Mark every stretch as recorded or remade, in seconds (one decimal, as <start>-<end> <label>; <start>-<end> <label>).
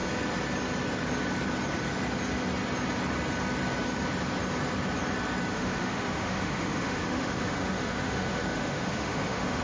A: 0.0-5.5 recorded; 5.5-9.6 remade